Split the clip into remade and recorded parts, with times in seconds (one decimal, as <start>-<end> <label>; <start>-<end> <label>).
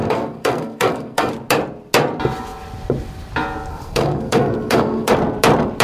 0.0-1.3 remade; 1.3-3.7 recorded; 3.7-5.1 remade; 5.1-5.8 recorded